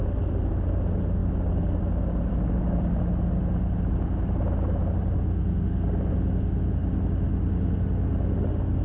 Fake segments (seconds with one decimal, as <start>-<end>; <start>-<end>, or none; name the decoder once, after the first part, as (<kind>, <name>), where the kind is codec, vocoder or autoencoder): none